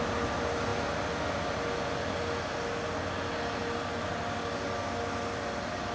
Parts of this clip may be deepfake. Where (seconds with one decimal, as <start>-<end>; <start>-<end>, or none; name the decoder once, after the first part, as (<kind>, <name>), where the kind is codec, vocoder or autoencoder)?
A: none